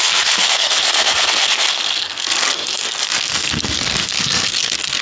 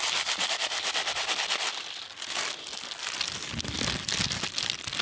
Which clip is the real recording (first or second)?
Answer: second